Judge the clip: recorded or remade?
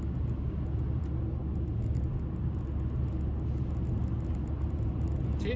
recorded